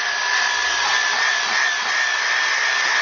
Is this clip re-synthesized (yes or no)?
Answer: no